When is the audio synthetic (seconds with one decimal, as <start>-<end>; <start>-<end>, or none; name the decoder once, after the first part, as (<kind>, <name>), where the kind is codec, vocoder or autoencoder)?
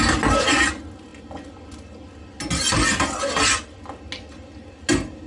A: none